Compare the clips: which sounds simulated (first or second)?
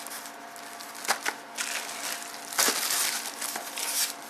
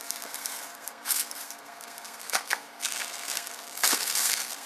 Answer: second